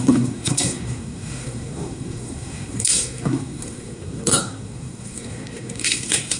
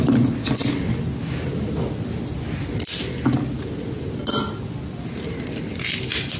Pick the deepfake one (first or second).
first